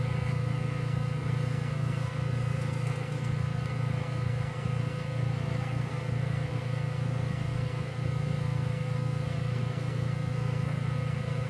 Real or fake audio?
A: fake